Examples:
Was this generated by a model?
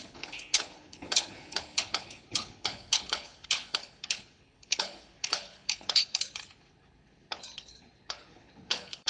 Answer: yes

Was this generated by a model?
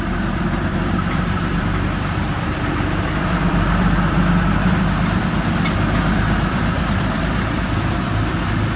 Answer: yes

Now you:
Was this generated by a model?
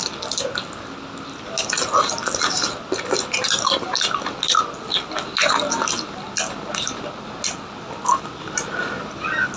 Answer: no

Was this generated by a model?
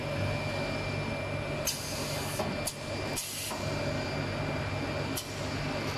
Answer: no